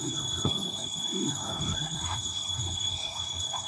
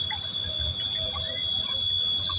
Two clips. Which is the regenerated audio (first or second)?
first